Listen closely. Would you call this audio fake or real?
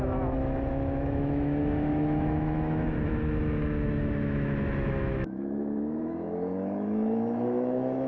fake